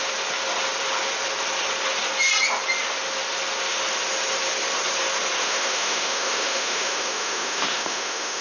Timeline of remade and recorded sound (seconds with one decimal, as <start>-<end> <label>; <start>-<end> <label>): 0.0-5.4 recorded; 5.4-8.4 remade